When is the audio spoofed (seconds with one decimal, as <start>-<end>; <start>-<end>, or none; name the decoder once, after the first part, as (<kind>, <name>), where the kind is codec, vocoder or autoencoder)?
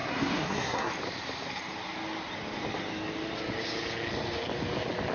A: 0.0-0.9 (codec, SNAC)